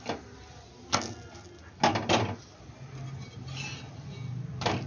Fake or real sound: real